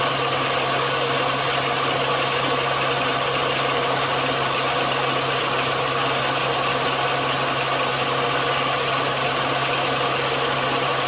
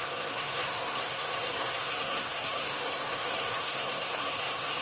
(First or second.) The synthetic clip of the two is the second